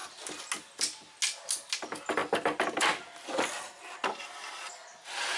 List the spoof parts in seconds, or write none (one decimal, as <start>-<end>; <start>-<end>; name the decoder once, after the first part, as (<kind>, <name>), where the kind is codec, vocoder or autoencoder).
none